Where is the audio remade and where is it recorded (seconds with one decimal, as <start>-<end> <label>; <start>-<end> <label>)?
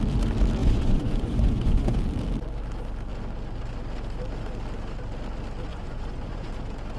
0.0-0.6 recorded; 0.6-2.0 remade; 2.0-5.7 recorded; 5.7-6.5 remade; 6.5-7.0 recorded